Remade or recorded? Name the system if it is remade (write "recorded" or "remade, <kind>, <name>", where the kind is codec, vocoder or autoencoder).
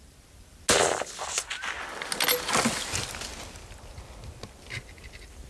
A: recorded